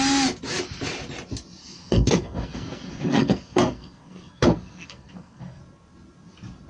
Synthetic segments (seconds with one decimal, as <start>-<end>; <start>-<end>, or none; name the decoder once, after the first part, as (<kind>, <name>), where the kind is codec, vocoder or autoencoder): 1.6-5.6 (codec, SNAC)